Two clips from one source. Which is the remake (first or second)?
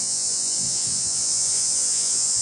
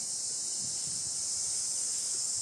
first